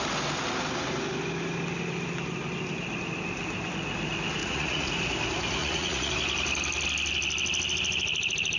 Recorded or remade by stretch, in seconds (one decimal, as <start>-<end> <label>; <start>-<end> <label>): 0.0-4.4 recorded; 4.4-4.9 remade; 4.9-5.6 recorded; 5.6-6.1 remade; 6.1-8.6 recorded